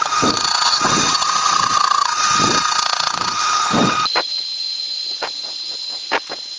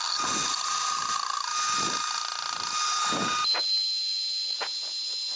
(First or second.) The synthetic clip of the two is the first